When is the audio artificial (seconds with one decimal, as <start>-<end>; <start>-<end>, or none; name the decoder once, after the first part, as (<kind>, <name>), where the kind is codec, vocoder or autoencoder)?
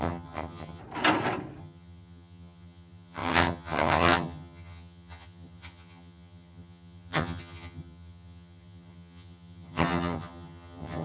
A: 0.0-0.8 (vocoder, HiFi-GAN); 1.6-11.0